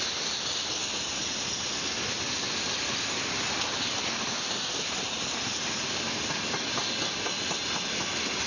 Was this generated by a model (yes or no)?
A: no